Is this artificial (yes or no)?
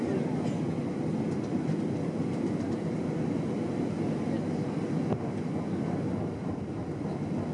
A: no